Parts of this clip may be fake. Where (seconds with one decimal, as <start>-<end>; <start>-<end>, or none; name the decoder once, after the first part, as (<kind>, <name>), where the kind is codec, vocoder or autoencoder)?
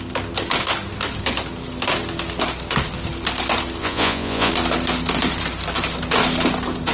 3.8-4.5 (vocoder, Vocos)